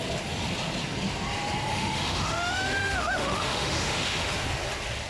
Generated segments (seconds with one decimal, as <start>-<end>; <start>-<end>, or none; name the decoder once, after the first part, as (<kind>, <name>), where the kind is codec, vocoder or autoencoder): 1.7-4.3 (autoencoder, DAC-VAE)